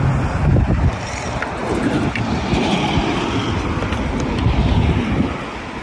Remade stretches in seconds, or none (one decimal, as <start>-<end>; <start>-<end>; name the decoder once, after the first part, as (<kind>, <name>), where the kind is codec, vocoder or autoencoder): none